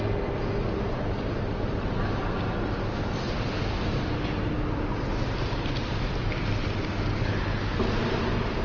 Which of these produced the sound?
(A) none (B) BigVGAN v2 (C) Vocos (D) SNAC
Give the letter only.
A